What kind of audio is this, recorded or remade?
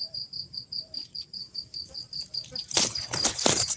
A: remade